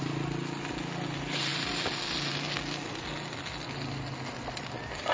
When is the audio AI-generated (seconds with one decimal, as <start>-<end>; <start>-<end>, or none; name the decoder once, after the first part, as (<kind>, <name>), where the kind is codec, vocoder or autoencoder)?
none